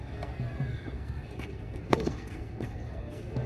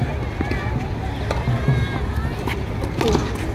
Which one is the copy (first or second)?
first